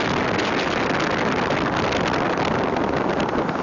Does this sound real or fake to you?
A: real